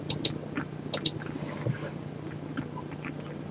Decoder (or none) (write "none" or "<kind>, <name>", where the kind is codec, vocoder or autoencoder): none